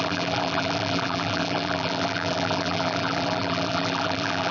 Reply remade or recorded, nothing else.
remade